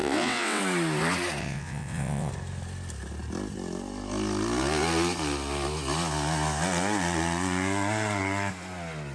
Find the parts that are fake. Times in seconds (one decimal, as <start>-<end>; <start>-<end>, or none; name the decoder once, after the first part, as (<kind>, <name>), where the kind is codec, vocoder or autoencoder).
0.0-0.6 (vocoder, WaveNeXt); 1.4-2.3